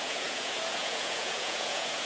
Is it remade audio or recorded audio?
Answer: remade